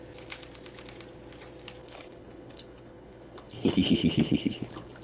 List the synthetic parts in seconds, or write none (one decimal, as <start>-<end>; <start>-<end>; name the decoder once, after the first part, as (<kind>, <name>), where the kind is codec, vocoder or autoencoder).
1.8-5.0 (codec, HILCodec)

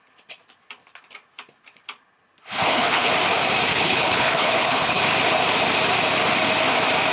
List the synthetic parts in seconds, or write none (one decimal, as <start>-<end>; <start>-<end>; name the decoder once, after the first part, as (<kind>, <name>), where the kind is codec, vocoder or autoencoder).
2.4-3.1 (codec, HILCodec); 3.7-5.0

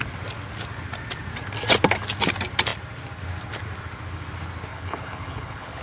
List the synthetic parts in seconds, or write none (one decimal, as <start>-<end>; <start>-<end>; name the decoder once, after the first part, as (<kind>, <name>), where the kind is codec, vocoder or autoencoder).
4.7-5.8 (codec, HILCodec)

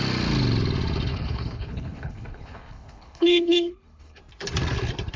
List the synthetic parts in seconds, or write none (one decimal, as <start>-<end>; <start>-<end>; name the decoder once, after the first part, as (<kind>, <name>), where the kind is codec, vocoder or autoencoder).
1.1-4.2 (codec, HILCodec)

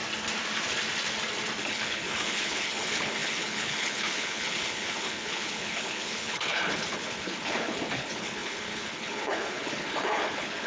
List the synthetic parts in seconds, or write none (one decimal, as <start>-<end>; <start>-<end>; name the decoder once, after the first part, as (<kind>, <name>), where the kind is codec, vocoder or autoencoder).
1.6-10.7 (codec, HILCodec)

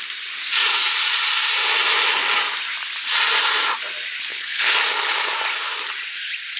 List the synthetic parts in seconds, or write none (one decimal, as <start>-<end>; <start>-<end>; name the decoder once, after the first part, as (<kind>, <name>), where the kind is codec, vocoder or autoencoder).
4.3-4.8 (codec, HILCodec)